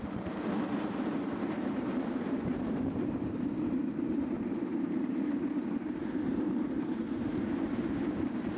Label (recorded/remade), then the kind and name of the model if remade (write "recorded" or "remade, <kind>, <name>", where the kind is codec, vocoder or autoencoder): remade, vocoder, BigVGAN v2